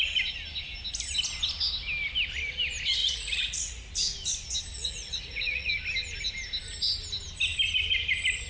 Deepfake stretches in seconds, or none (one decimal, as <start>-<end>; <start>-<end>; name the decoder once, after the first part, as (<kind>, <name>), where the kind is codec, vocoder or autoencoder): 3.0-3.9 (vocoder, Vocos); 4.7-5.7